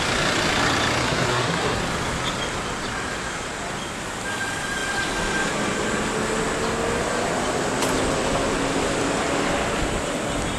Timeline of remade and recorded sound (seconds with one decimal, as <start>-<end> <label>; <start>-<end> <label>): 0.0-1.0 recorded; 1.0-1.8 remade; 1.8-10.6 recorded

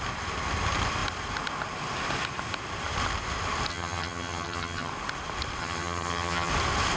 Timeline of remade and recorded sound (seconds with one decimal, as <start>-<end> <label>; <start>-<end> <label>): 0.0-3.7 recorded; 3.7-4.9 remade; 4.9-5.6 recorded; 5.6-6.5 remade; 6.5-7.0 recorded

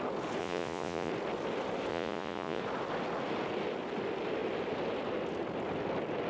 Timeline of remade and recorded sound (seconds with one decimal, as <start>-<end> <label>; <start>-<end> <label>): 0.0-0.4 recorded; 0.4-1.1 remade; 1.1-1.9 recorded; 1.9-2.6 remade; 2.6-6.3 recorded

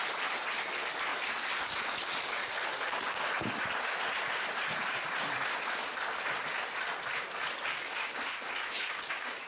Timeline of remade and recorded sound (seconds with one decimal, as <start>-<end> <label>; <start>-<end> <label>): 0.0-7.8 recorded; 7.8-9.5 remade